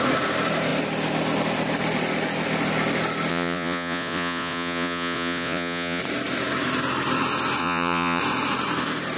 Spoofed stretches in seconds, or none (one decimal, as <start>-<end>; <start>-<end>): 3.3-6.0; 7.6-8.2